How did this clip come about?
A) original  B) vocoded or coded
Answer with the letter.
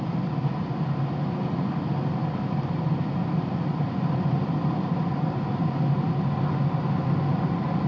A